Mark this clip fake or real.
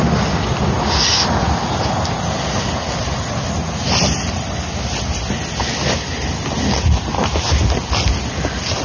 real